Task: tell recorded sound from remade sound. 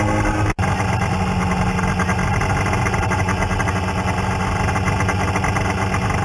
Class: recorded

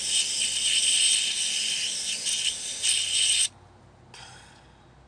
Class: recorded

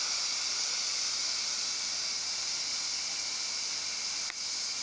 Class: recorded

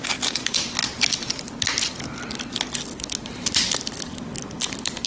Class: recorded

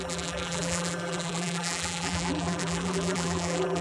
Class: remade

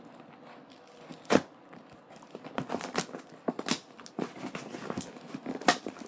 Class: recorded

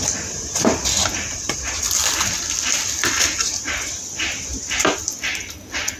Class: recorded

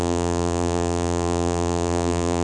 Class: remade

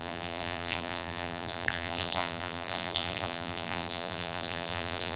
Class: remade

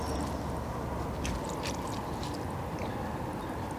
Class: recorded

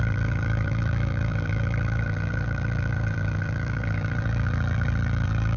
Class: remade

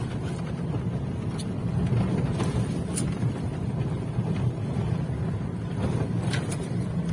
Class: remade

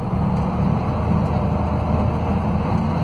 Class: recorded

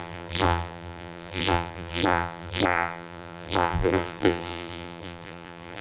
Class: remade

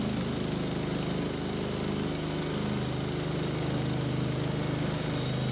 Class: recorded